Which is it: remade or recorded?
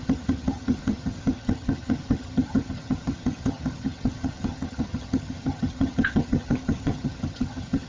remade